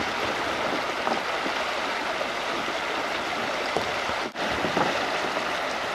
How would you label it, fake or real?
real